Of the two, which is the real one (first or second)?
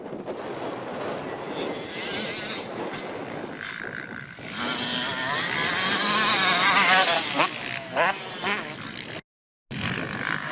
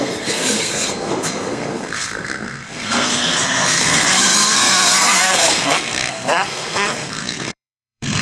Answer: first